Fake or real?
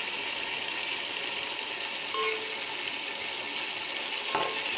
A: real